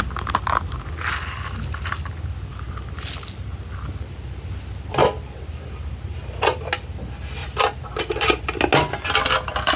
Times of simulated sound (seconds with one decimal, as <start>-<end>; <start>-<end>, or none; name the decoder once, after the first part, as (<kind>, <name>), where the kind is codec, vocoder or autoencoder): 7.4-8.4 (vocoder, BigVGAN v2)